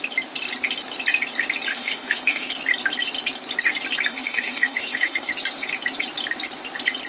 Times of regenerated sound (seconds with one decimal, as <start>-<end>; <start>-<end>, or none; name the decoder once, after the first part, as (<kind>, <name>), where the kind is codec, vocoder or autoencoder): 1.7-2.5 (autoencoder, DAC-VAE); 4.1-5.3